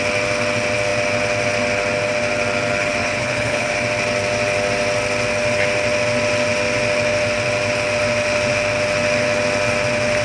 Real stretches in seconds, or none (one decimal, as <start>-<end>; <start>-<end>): 0.0-3.0; 3.7-10.2